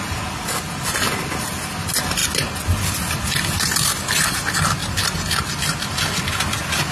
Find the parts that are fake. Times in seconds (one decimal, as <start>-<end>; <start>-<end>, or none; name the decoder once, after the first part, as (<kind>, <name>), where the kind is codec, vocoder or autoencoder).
none

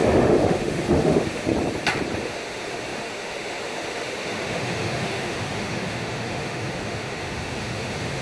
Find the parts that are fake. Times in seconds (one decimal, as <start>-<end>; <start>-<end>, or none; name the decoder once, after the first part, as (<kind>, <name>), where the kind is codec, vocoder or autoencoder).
0.0-1.5 (autoencoder, DAC-VAE); 2.2-8.2

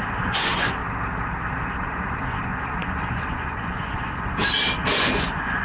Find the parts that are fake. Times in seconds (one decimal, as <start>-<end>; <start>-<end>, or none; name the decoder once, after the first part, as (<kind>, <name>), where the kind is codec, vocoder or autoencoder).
0.0-0.8 (vocoder, Vocos); 1.8-4.4; 5.0-5.6